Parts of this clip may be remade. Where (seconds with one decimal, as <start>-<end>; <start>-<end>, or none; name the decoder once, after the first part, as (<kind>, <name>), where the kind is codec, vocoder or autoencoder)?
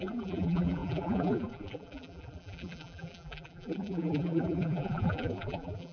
0.0-5.9 (vocoder, BigVGAN v2)